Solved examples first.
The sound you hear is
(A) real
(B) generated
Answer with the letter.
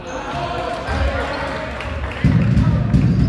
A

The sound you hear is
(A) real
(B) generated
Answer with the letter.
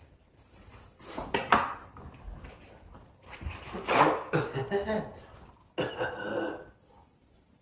A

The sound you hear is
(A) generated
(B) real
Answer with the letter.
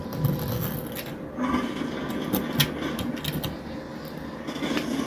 B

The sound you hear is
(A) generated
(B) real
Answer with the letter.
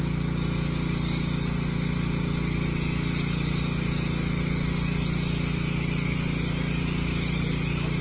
B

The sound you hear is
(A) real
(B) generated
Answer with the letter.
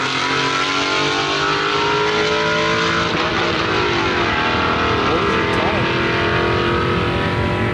A